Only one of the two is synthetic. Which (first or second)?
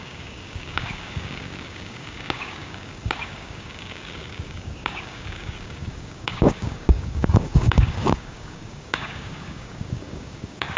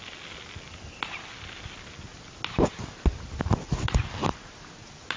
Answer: first